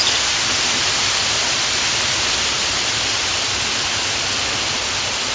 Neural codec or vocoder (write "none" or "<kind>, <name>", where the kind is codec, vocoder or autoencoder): none